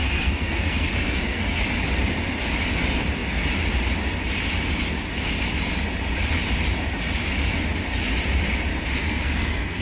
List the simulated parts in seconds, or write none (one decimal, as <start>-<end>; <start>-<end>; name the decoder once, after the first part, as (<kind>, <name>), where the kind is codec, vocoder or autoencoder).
0.0-1.6 (codec, SNAC); 9.0-9.8